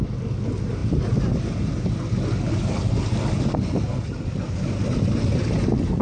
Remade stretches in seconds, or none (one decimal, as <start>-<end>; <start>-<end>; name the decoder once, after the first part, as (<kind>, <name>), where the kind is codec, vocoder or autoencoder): none